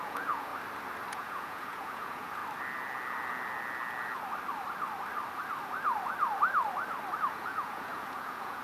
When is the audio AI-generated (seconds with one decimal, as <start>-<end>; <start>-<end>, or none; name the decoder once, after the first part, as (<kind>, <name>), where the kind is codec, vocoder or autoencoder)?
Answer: 0.0-0.5 (vocoder, Vocos); 1.1-2.4; 7.2-8.6